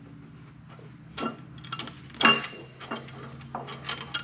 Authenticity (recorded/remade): recorded